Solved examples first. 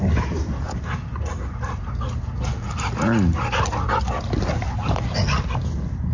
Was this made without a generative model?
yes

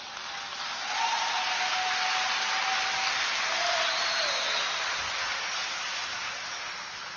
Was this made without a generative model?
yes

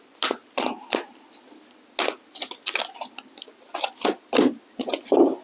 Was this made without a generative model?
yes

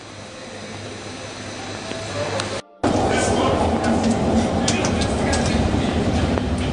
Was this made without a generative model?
yes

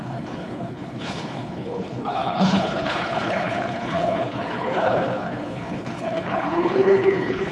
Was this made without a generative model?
no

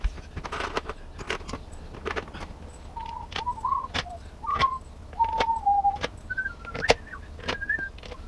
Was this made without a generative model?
yes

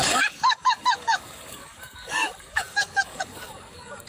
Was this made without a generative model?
no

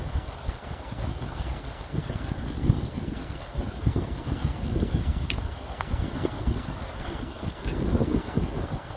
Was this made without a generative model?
no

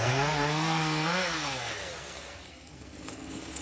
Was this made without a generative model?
no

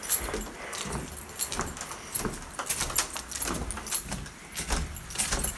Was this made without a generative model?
yes